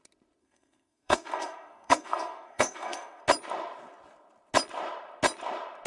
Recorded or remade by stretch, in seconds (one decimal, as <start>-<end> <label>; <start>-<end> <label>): 0.0-0.4 recorded; 0.4-3.2 remade; 3.2-5.9 recorded